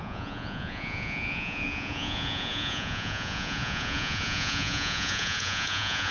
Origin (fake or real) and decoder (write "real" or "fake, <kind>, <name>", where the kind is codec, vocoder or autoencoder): fake, vocoder, Vocos